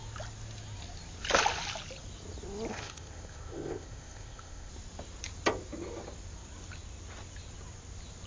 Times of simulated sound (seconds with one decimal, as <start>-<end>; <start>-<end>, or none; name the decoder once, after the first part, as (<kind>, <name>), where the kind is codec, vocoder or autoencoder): 2.7-4.7 (codec, ZipCodec)